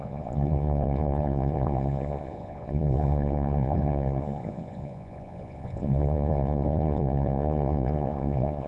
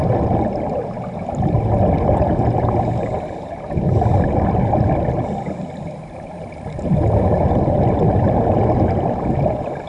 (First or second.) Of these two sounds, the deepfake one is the first